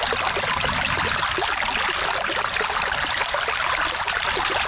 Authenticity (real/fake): real